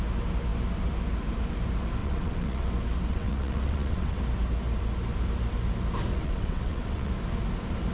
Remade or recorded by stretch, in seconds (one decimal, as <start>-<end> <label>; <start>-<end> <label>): 0.0-2.0 recorded; 2.0-2.7 remade; 2.7-3.1 recorded; 3.1-4.2 remade; 4.2-6.1 recorded; 6.1-7.1 remade; 7.1-7.9 recorded